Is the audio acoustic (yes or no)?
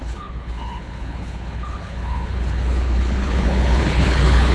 no